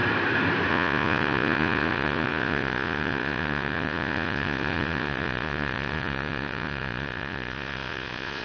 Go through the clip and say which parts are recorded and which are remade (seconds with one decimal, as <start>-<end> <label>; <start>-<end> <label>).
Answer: 0.0-0.7 recorded; 0.7-8.4 remade

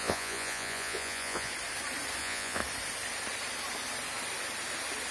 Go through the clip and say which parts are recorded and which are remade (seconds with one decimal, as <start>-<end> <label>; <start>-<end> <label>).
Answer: 0.0-1.5 remade; 1.5-2.2 recorded; 2.2-2.6 remade; 2.6-5.1 recorded

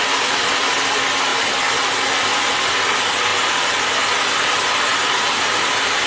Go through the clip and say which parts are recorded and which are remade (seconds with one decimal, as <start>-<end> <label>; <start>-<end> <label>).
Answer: 0.0-6.1 recorded